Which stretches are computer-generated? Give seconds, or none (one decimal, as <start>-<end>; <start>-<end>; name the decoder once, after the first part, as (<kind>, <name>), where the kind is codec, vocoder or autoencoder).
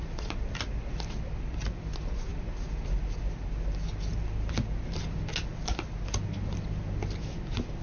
none